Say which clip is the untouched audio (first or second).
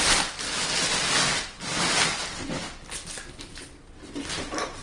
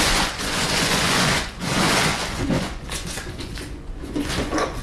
first